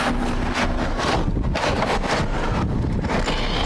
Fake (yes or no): no